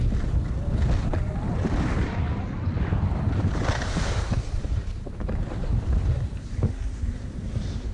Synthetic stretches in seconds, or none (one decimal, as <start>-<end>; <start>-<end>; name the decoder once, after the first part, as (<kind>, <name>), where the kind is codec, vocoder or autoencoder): none